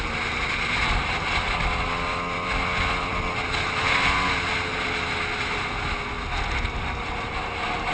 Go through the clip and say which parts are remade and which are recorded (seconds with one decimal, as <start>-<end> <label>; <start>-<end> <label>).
0.0-7.9 recorded